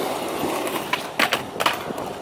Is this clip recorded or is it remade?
recorded